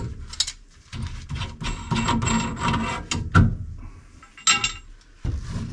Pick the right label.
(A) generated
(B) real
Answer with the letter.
B